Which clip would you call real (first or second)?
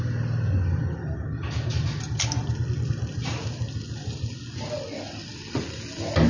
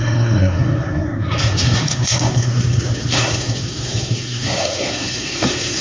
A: first